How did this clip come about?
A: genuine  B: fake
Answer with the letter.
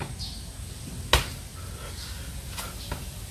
A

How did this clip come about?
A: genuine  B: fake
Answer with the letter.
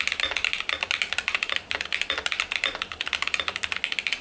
A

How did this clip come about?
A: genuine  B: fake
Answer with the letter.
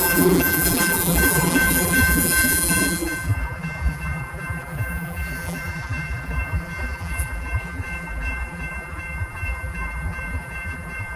B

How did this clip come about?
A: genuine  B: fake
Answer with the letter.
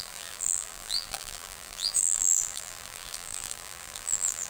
B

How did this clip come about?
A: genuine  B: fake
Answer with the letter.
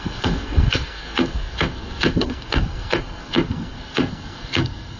B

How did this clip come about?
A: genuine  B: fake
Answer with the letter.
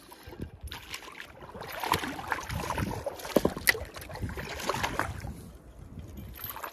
A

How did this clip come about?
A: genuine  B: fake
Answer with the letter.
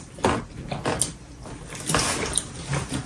A